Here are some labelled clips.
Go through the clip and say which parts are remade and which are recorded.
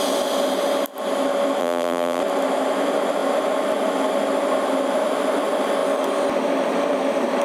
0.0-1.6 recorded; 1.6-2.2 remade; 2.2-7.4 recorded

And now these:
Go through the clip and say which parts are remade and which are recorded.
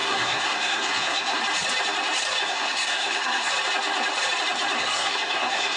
0.0-1.4 remade; 1.4-2.4 recorded; 2.4-3.5 remade; 3.5-4.8 recorded; 4.8-5.8 remade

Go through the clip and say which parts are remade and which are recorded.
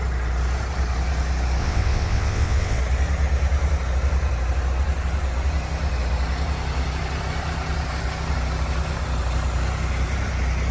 0.0-1.6 recorded; 1.6-2.8 remade; 2.8-10.7 recorded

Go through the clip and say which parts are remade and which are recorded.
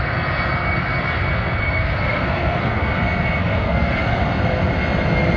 0.0-1.6 recorded; 1.6-2.8 remade; 2.8-3.4 recorded; 3.4-4.2 remade; 4.2-5.4 recorded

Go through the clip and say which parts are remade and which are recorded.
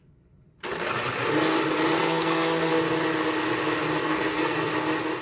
0.0-2.0 recorded; 2.0-2.7 remade; 2.7-4.0 recorded; 4.0-4.7 remade; 4.7-5.2 recorded